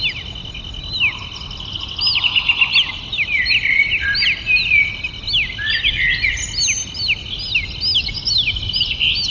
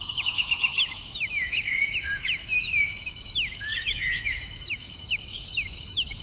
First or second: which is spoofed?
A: second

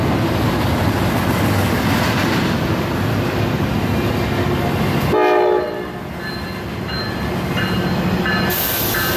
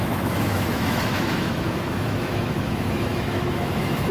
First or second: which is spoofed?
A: second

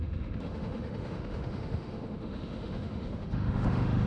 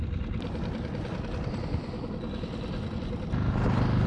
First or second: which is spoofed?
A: first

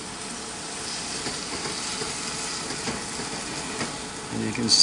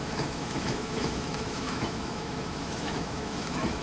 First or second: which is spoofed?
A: second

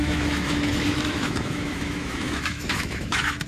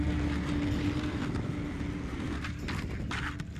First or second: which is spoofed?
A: first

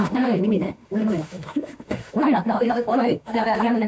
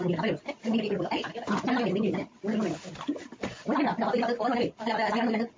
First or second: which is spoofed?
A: first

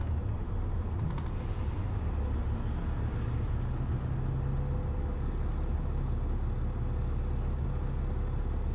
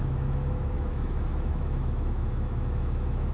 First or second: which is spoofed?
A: second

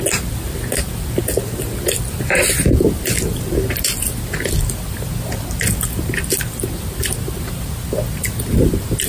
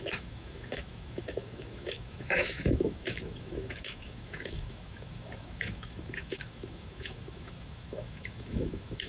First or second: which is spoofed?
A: second